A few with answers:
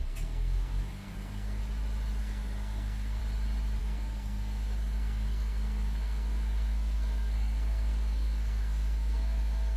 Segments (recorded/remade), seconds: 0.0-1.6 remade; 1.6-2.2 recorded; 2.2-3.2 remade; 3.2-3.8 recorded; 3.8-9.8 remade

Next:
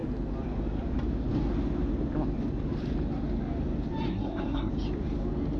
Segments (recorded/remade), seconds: 0.0-4.1 recorded; 4.1-4.7 remade; 4.7-5.6 recorded